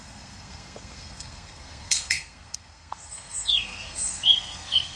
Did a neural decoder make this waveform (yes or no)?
yes